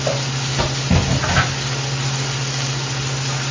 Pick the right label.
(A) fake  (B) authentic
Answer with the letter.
B